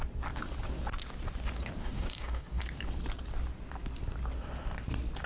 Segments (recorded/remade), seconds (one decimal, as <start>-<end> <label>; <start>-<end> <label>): 0.0-1.8 recorded; 1.8-2.6 remade; 2.6-5.3 recorded